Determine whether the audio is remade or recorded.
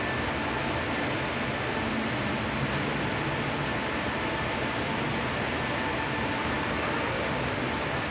recorded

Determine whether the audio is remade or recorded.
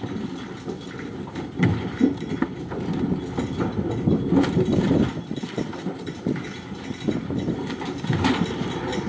recorded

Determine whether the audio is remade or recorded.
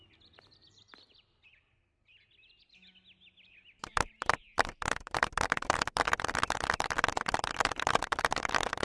remade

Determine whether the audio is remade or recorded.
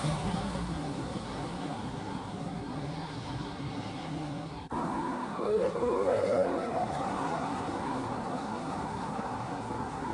remade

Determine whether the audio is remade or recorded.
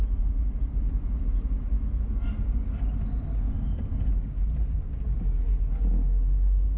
recorded